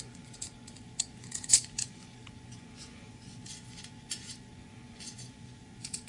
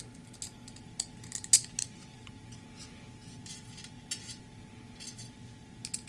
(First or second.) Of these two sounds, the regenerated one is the first